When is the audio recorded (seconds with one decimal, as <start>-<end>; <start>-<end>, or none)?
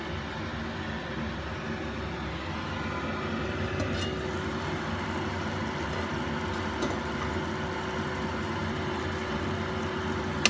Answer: 0.0-10.5